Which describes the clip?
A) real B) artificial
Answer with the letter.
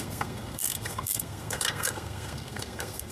B